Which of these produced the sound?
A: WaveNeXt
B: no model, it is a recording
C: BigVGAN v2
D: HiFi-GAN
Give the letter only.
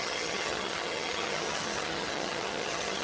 D